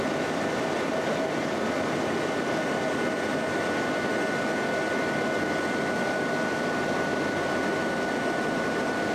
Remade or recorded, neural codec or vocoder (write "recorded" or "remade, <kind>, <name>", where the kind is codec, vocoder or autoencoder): recorded